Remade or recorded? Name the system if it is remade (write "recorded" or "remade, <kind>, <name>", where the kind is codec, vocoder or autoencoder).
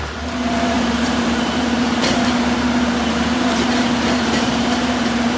remade, vocoder, BigVGAN v2